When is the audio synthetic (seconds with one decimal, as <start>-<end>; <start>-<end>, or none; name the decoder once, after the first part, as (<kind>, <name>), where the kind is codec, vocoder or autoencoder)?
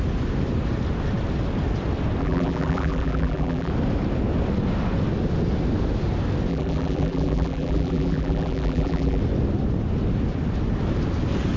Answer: 2.2-3.7 (vocoder, BigVGAN v2); 6.5-9.2